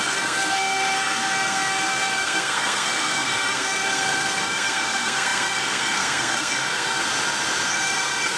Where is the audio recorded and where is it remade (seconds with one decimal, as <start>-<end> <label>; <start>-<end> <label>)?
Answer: 0.0-7.0 remade; 7.0-7.7 recorded; 7.7-8.4 remade